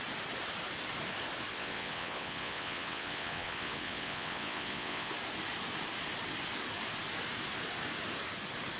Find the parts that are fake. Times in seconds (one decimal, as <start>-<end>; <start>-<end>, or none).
1.5-5.1